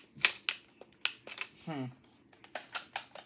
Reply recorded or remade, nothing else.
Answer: recorded